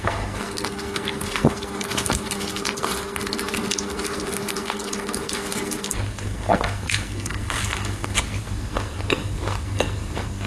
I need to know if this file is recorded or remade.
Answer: remade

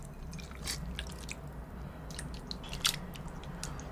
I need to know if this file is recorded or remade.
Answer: recorded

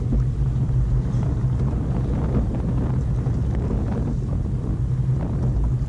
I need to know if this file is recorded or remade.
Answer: recorded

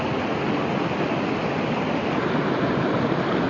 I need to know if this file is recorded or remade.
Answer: recorded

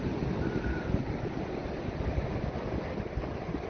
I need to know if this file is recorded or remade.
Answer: recorded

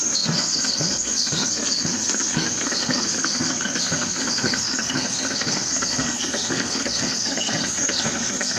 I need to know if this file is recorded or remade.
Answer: remade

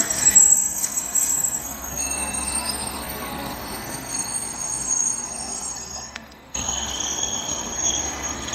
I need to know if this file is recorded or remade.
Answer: remade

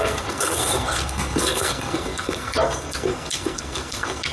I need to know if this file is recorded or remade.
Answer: remade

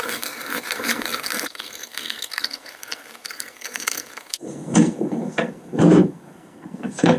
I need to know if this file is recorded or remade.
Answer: remade